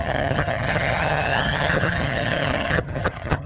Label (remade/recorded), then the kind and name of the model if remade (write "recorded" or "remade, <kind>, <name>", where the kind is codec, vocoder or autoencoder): remade, vocoder, HiFi-GAN